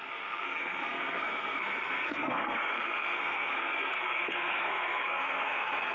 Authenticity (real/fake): fake